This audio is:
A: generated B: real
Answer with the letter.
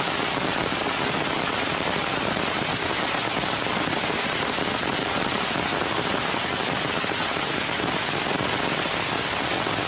A